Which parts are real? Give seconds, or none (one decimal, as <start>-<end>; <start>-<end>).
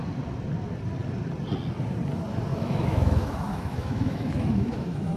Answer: 0.0-2.5